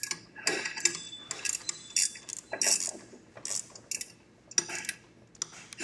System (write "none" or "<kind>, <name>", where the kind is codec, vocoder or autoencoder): none